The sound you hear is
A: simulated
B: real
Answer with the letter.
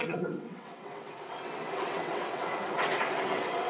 A